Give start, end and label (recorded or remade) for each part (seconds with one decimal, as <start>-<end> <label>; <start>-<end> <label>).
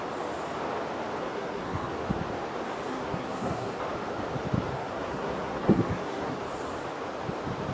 0.0-1.2 recorded; 1.2-1.9 remade; 1.9-2.9 recorded; 2.9-3.8 remade; 3.8-4.7 recorded; 4.7-6.4 remade; 6.4-7.7 recorded